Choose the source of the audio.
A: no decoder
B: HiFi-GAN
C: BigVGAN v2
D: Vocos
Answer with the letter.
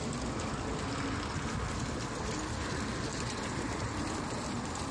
A